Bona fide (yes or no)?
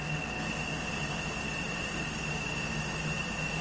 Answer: yes